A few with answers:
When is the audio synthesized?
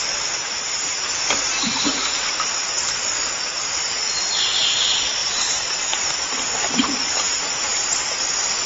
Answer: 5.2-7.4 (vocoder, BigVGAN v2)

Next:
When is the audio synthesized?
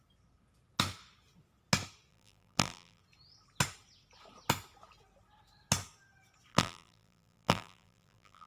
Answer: 2.1-3.0 (vocoder, BigVGAN v2); 6.5-8.5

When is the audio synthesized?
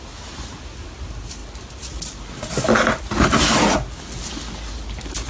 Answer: none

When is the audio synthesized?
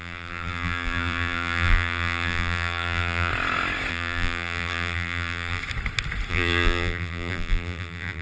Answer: 0.0-3.3 (vocoder, BigVGAN v2); 3.9-5.6; 6.3-8.2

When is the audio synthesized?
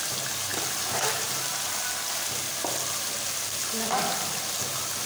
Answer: none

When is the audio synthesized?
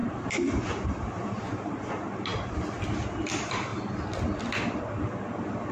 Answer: 0.0-1.9 (vocoder, BigVGAN v2); 2.3-3.3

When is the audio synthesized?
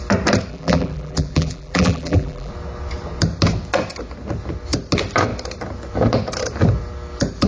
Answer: 0.5-2.5 (vocoder, BigVGAN v2)